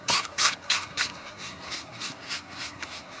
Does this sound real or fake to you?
fake